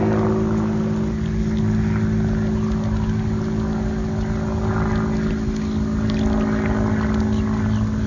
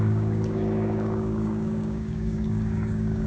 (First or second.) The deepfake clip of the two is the second